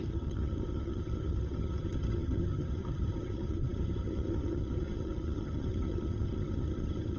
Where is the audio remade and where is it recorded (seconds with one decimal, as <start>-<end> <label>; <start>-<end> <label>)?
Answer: 0.0-7.2 remade